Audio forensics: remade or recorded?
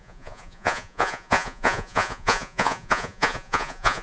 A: remade